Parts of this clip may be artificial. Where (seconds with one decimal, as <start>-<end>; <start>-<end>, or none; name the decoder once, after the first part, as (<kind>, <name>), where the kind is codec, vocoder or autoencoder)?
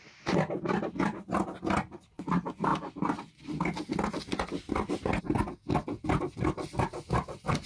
none